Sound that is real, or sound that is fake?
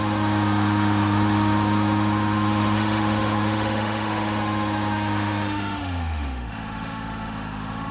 fake